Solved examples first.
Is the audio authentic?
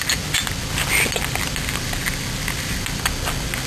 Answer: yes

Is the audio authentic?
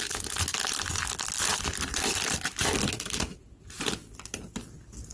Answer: yes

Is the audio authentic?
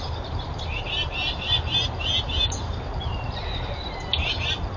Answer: yes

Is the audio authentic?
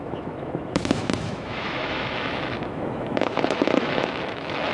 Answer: no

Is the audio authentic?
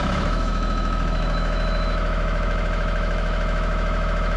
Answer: no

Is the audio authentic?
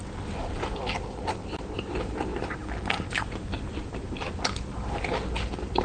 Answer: yes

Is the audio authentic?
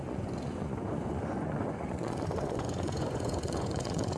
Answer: no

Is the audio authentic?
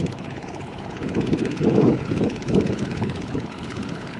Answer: no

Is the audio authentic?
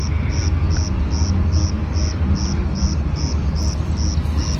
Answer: yes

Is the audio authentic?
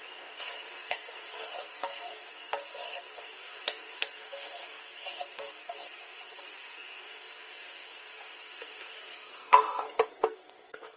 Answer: no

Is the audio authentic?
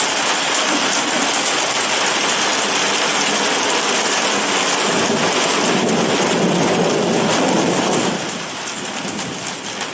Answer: yes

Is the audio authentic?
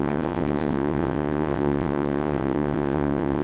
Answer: no